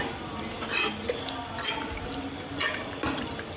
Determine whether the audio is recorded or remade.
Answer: recorded